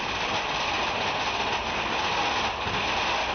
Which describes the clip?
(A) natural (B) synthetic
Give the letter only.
A